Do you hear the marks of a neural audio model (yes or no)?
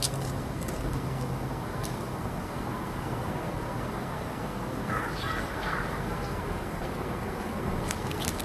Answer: yes